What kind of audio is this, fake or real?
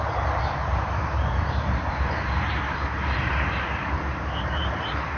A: fake